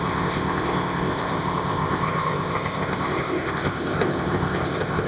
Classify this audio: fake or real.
fake